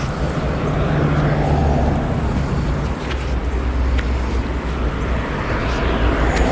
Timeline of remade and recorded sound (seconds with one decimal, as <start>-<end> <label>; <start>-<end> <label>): 0.0-6.5 recorded